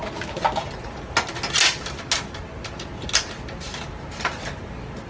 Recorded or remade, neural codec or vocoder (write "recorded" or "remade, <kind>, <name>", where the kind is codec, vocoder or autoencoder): recorded